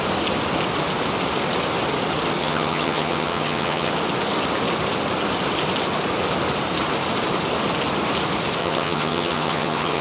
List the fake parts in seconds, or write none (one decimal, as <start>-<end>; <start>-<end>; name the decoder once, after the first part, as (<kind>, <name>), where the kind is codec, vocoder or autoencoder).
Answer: 2.4-3.9 (vocoder, HiFi-GAN); 8.6-10.0